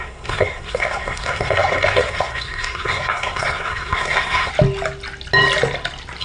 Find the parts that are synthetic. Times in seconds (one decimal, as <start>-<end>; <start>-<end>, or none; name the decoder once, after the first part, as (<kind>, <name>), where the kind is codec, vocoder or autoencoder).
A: 0.0-4.5 (codec, SNAC)